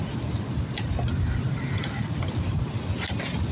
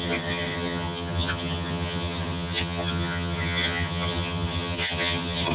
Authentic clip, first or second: first